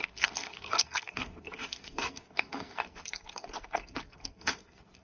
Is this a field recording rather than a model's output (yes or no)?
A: no